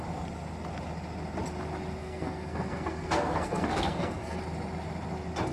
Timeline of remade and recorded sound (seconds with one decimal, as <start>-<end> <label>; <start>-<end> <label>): 0.0-2.0 recorded; 2.0-4.4 remade; 4.4-5.5 recorded